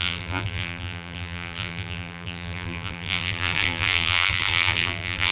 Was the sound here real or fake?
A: fake